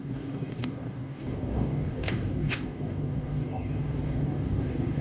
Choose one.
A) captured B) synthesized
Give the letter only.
B